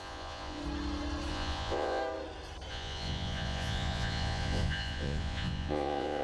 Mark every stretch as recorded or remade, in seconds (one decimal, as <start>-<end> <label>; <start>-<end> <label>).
0.0-0.6 remade; 0.6-1.3 recorded; 1.3-2.0 remade; 2.0-2.7 recorded; 2.7-6.2 remade